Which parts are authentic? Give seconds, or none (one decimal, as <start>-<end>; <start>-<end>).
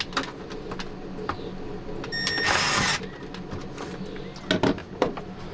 0.0-5.5